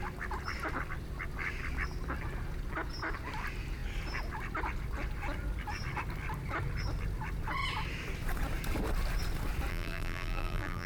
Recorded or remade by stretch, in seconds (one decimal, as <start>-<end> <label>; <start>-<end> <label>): 0.0-9.7 recorded; 9.7-10.9 remade